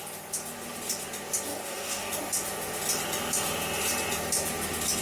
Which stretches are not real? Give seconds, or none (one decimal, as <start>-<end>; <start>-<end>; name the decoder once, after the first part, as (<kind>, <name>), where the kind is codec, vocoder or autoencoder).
1.5-2.1 (codec, DAC)